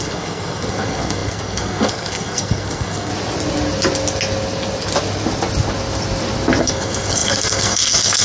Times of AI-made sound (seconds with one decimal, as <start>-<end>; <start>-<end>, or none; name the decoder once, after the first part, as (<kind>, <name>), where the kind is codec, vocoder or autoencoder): 0.0-3.1 (codec, SNAC); 6.6-8.2